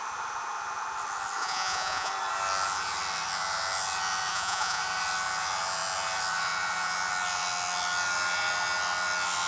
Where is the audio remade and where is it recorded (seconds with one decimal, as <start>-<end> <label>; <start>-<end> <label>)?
0.0-1.4 recorded; 1.4-2.1 remade; 2.1-4.3 recorded; 4.3-4.8 remade; 4.8-9.5 recorded